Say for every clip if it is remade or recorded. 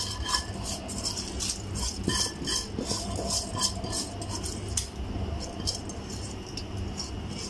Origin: recorded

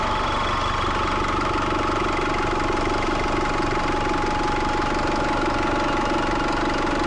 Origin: recorded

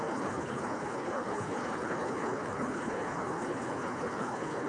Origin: remade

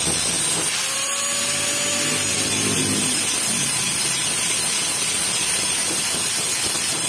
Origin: recorded